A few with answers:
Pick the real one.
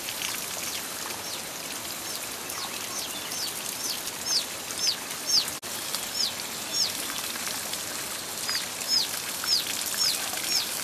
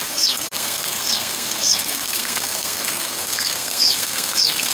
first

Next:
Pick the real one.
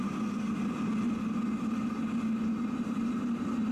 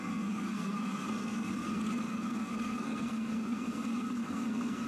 first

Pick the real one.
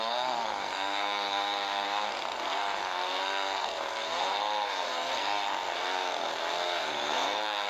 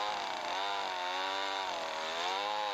second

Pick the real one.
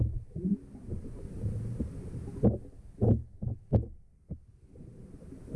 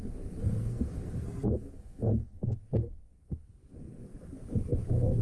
first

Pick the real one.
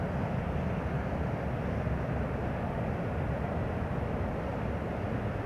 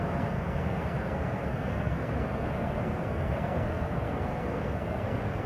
first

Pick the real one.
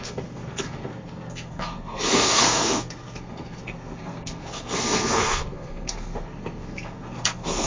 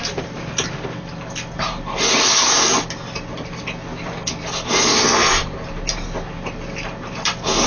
second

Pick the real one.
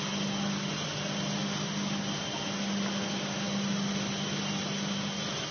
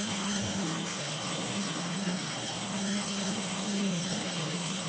first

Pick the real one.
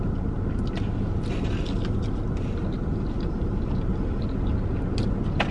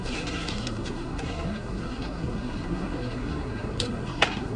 first